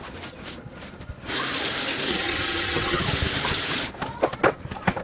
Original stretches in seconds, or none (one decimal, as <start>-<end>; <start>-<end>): 0.0-2.1; 3.0-5.0